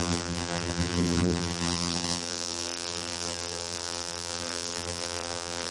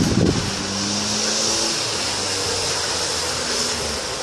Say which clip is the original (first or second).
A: second